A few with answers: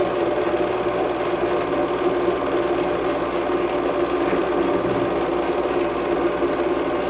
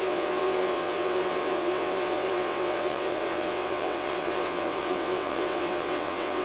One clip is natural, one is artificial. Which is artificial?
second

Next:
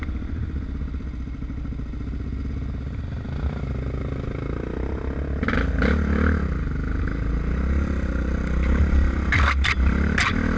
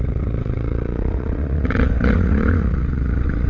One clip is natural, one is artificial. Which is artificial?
second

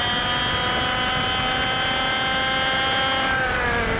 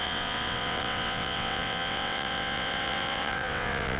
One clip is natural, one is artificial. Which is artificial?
second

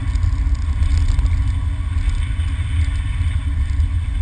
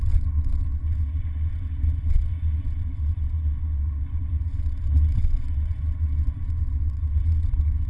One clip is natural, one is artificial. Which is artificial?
second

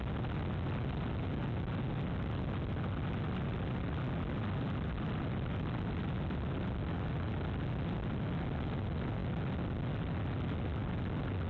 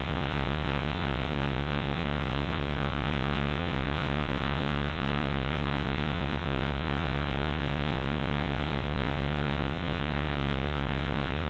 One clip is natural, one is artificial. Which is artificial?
second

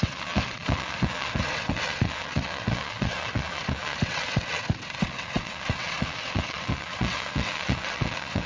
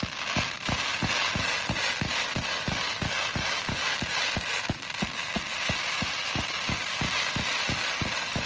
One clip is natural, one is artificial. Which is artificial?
first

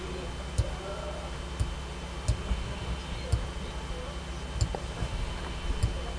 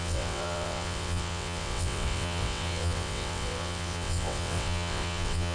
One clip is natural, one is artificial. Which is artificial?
second